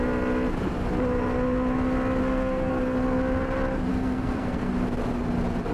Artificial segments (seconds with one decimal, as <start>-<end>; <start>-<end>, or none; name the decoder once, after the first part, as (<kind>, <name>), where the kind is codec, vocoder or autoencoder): 2.2-2.7 (codec, SNAC); 3.9-4.7